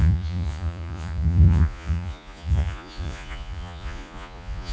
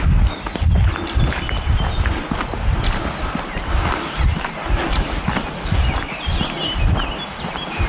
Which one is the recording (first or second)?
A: second